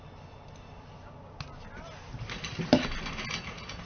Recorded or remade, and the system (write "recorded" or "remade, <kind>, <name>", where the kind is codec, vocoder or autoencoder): recorded